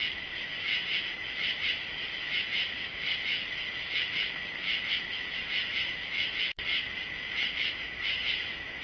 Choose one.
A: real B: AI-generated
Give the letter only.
B